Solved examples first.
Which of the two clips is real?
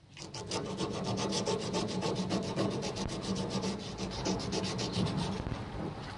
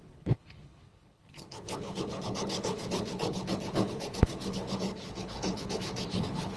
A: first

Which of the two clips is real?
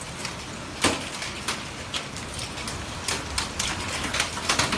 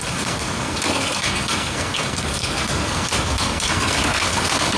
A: first